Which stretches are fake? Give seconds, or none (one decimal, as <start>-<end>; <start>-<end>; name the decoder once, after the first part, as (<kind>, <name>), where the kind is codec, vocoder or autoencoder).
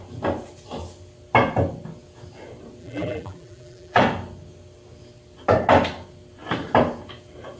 2.8-4.0 (vocoder, BigVGAN v2)